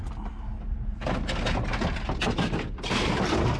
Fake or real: real